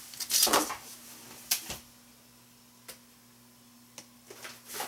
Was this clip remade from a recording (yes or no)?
no